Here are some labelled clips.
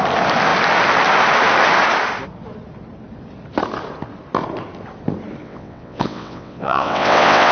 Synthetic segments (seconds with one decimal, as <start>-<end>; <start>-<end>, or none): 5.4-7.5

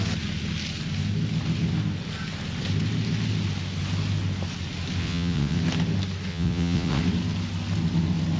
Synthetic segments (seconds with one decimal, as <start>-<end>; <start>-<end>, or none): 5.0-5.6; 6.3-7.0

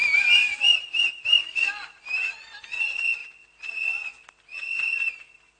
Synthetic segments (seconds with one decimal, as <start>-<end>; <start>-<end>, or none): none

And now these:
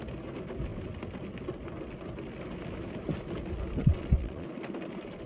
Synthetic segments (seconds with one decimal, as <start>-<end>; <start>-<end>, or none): 3.8-4.5